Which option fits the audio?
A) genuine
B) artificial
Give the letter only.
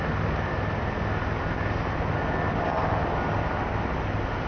A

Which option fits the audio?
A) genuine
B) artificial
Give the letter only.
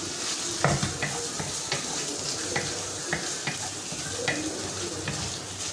A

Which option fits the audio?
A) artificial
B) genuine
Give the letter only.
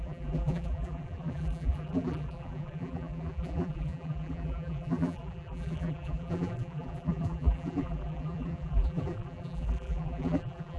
A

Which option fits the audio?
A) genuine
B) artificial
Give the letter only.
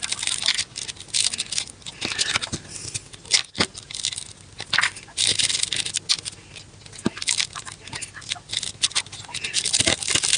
A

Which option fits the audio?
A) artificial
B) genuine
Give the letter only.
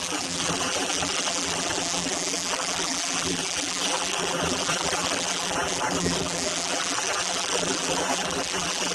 A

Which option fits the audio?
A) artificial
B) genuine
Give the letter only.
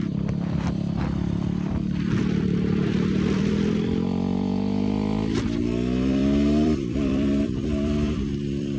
A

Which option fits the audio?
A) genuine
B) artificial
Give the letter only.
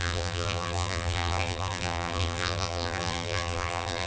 B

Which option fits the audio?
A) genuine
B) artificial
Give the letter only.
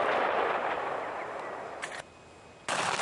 A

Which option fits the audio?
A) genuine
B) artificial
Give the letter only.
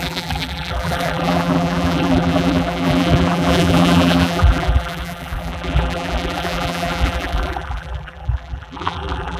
B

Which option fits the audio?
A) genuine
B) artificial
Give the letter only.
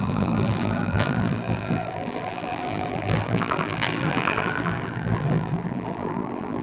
B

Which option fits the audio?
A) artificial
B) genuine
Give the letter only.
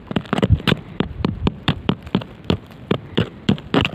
A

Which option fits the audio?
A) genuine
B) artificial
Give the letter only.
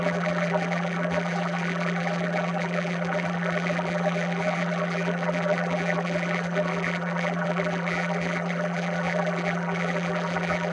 B